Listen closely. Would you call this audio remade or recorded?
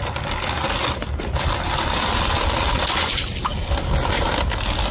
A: recorded